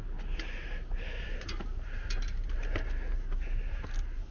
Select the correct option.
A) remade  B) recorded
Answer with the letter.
B